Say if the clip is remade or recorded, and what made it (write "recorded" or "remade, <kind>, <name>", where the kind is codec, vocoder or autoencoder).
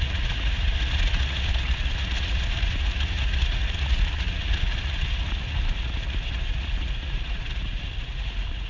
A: remade, vocoder, Vocos